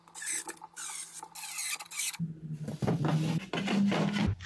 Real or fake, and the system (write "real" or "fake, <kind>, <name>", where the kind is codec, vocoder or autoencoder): real